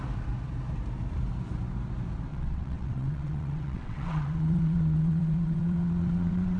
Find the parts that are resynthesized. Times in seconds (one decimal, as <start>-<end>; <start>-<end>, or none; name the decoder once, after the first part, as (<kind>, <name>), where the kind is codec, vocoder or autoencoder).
2.3-6.6 (vocoder, WaveNeXt)